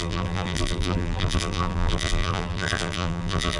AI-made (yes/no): yes